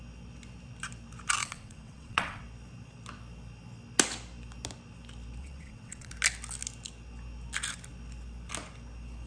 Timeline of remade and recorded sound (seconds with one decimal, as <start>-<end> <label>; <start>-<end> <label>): 0.0-1.4 recorded; 1.4-2.4 remade; 2.4-5.4 recorded; 5.4-6.1 remade; 6.1-9.3 recorded